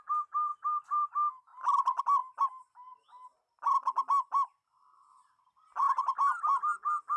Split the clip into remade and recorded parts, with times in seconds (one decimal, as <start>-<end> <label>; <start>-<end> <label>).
0.0-0.5 recorded; 0.5-1.1 remade; 1.1-7.2 recorded

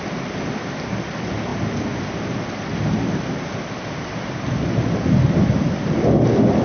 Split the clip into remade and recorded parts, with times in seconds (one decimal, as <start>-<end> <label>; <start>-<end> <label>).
0.0-6.6 recorded

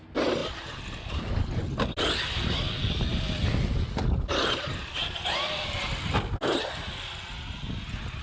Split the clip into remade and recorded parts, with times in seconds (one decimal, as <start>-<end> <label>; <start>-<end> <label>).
0.0-8.2 recorded